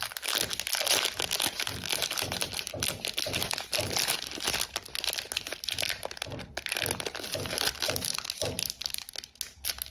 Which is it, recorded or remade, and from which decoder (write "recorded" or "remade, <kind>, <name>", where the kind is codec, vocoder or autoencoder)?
recorded